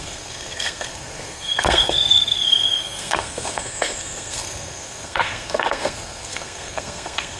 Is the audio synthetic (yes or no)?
yes